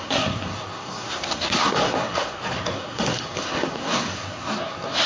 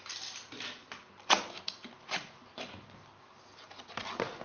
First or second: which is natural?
second